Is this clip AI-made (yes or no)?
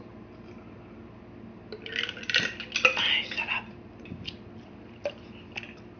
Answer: no